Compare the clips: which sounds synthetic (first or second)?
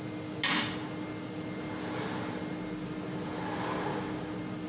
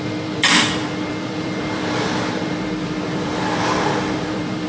second